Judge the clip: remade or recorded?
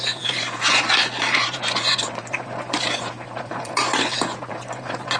remade